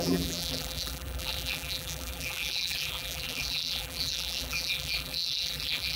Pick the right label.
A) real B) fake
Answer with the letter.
B